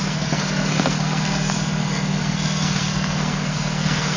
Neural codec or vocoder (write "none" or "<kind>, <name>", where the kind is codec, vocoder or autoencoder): codec, SNAC